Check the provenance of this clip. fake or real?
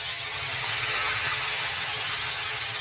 fake